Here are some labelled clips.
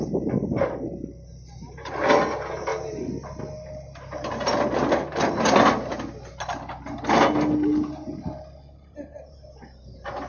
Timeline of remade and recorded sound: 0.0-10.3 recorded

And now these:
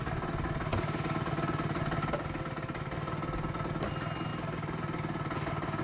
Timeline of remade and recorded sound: 0.0-5.8 recorded

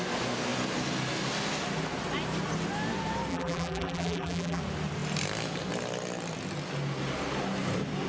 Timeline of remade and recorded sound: 0.0-3.3 recorded; 3.3-4.6 remade; 4.6-8.1 recorded

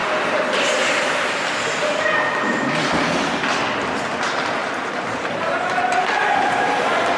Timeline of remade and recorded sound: 0.0-4.6 recorded; 4.6-6.2 remade; 6.2-7.2 recorded

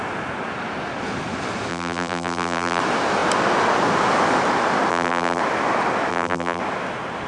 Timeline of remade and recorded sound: 0.0-1.7 recorded; 1.7-2.8 remade; 2.8-4.9 recorded; 4.9-5.4 remade; 5.4-6.1 recorded; 6.1-6.6 remade; 6.6-7.3 recorded

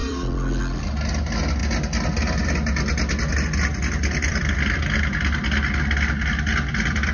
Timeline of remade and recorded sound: 0.0-0.6 remade; 0.6-3.7 recorded; 3.7-4.8 remade; 4.8-7.1 recorded

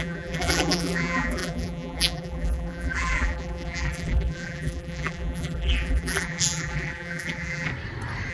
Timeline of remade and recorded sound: 0.0-7.7 remade; 7.7-8.3 recorded

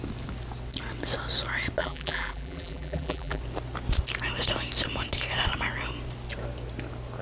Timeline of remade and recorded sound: 0.0-1.8 recorded; 1.8-3.4 remade; 3.4-7.2 recorded